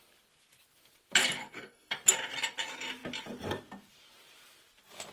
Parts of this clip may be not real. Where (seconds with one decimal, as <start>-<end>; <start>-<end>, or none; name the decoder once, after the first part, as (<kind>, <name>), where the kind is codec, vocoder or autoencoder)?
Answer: 1.4-1.9 (codec, SNAC)

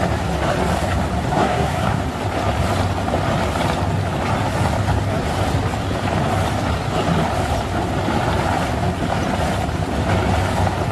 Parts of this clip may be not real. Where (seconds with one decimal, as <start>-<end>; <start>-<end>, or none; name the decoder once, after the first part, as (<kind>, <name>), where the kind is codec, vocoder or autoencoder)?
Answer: 1.3-2.0 (codec, SNAC)